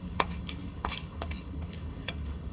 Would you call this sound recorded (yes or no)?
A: no